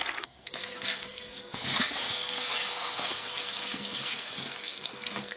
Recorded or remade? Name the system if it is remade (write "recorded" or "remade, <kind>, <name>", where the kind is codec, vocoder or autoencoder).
remade, codec, SNAC